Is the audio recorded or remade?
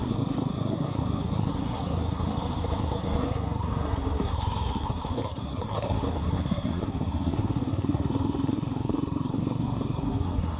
remade